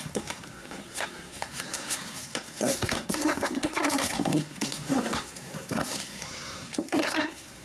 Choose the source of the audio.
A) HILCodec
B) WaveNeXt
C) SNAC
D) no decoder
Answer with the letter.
C